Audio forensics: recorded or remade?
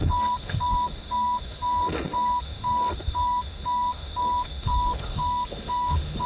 remade